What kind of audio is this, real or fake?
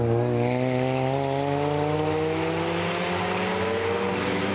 real